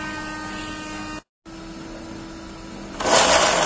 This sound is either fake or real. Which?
real